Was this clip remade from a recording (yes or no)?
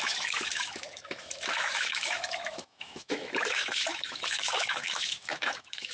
yes